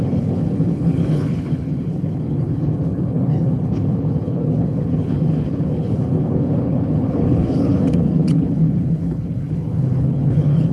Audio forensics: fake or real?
fake